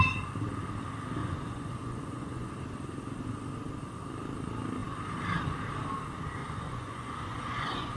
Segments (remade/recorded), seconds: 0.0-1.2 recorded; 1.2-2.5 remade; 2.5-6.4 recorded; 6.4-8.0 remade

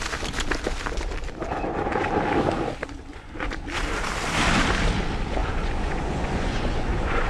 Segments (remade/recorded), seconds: 0.0-3.1 recorded; 3.1-3.6 remade; 3.6-5.4 recorded; 5.4-7.3 remade

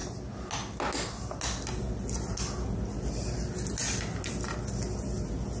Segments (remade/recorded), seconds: 0.0-5.6 recorded

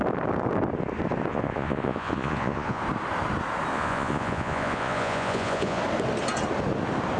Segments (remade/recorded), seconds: 0.0-1.3 recorded; 1.3-2.8 remade; 2.8-3.7 recorded; 3.7-5.8 remade; 5.8-7.2 recorded